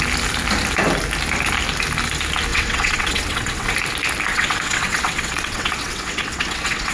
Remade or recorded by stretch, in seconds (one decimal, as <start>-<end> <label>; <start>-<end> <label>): 0.0-2.5 recorded; 2.5-3.7 remade; 3.7-4.3 recorded; 4.3-6.9 remade